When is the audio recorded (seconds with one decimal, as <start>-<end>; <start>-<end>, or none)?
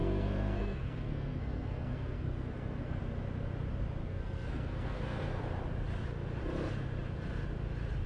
3.0-4.0; 5.4-8.1